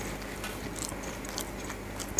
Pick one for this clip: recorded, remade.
recorded